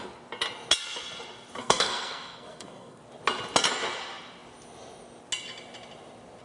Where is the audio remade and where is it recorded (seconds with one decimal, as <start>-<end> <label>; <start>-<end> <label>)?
0.0-1.6 recorded; 1.6-3.0 remade; 3.0-6.4 recorded